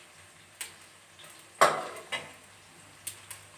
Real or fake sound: real